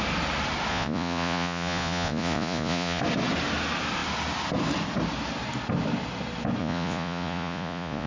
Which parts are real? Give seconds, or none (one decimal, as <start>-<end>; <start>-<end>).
0.0-0.7; 3.0-6.6